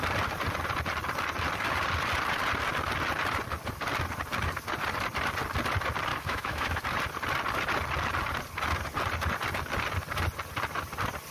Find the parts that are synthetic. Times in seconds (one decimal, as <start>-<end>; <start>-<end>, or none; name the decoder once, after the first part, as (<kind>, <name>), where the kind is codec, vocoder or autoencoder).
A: 6.1-6.8 (autoencoder, DAC-VAE)